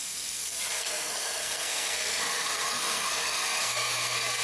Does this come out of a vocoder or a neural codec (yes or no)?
yes